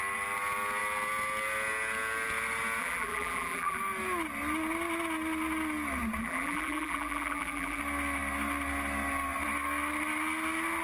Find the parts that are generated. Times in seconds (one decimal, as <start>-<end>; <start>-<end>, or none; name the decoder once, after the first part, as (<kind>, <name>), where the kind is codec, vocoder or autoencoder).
2.8-3.8 (vocoder, BigVGAN v2); 6.2-7.8